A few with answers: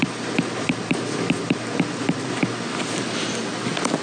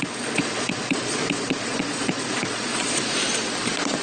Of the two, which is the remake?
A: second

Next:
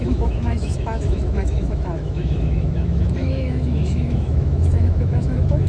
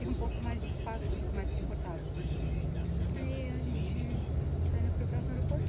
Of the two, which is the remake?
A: first